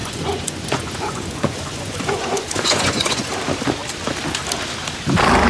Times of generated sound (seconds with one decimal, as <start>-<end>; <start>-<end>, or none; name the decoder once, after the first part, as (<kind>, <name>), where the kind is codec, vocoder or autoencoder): 0.0-3.3 (vocoder, Vocos)